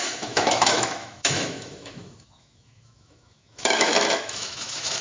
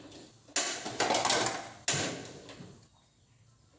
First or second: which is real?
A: second